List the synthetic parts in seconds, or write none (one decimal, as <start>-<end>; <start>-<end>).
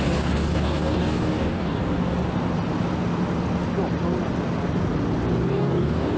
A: 0.0-1.8; 5.5-6.2